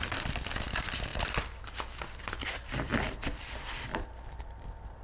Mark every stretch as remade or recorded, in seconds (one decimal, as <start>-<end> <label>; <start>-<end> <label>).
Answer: 0.0-1.1 remade; 1.1-2.4 recorded; 2.4-5.0 remade